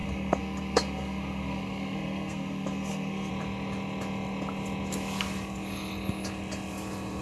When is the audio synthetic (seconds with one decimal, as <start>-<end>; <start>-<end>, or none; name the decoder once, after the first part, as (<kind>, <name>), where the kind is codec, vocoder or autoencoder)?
0.0-3.3 (codec, SNAC)